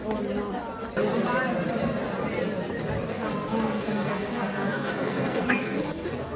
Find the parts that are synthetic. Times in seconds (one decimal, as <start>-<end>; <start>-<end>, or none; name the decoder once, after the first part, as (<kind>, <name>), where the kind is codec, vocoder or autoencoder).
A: 3.1-6.4 (codec, SNAC)